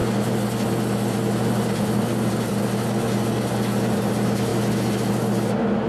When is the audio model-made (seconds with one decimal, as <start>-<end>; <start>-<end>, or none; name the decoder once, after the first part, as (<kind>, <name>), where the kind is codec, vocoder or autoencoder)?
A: none